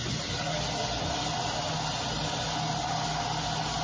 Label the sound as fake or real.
real